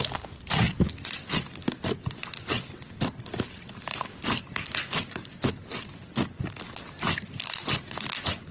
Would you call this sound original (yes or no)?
no